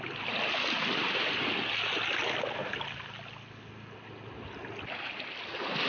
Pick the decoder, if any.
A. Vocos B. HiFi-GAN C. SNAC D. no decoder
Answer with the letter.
D